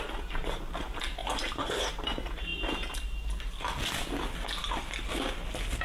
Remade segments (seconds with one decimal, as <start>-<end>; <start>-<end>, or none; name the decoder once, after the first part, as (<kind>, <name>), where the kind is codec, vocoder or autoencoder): 1.2-1.8 (vocoder, BigVGAN v2)